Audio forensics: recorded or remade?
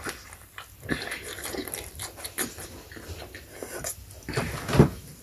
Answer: recorded